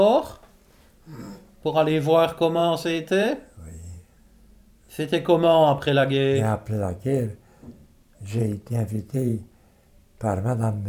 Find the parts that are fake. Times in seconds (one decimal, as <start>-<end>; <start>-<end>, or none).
2.6-4.1; 8.4-10.0